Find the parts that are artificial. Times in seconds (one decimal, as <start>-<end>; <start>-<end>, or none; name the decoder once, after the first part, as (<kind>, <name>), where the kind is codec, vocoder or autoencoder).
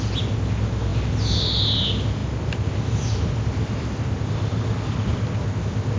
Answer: none